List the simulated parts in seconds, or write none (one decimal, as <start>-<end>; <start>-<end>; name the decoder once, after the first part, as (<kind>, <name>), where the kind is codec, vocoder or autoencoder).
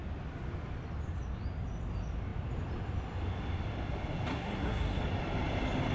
4.3-5.0 (codec, SNAC)